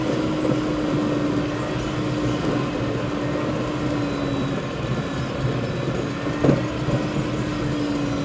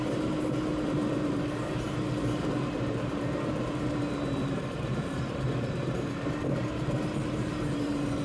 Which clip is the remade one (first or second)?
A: second